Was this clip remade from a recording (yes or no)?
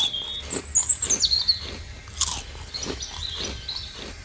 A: no